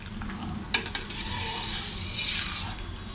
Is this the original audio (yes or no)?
yes